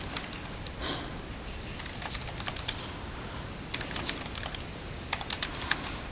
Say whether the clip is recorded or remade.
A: recorded